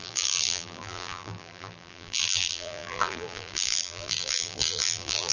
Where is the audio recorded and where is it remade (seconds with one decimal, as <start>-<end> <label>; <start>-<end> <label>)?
0.0-5.3 remade